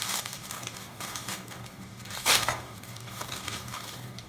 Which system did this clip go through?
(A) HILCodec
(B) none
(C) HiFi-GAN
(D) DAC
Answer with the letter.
D